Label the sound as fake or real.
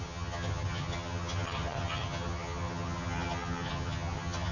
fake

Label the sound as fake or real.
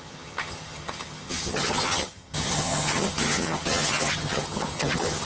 fake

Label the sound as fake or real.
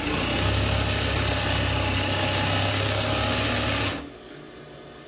real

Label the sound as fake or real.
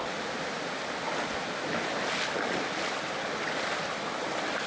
real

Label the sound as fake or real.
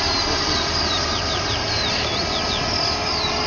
real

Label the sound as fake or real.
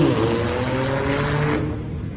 real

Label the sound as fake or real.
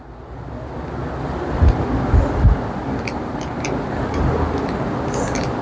real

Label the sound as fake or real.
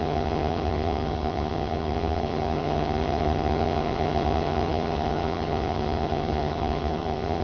fake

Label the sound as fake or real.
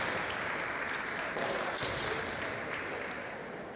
real